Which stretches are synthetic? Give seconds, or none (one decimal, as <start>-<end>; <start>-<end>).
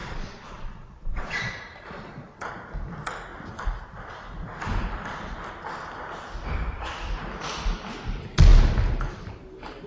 0.0-1.5